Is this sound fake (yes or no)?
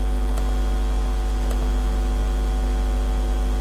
no